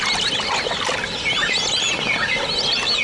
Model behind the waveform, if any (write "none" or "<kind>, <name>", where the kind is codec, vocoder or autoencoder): none